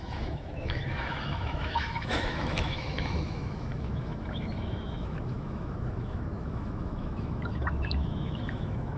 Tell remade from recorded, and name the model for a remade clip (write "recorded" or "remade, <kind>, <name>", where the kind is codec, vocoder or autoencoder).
remade, autoencoder, DAC-VAE